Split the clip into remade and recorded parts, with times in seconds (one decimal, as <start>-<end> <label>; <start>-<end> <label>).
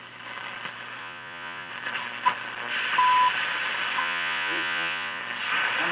0.0-1.0 recorded; 1.0-1.7 remade; 1.7-4.0 recorded; 4.0-5.2 remade; 5.2-5.9 recorded